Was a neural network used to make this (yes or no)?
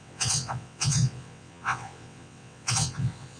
yes